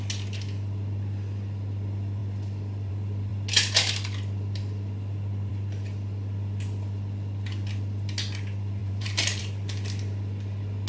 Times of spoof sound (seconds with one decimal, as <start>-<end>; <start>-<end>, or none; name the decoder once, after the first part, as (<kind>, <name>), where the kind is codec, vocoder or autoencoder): 8.8-9.4 (vocoder, BigVGAN v2)